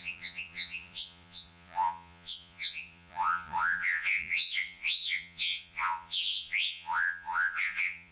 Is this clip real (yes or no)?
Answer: no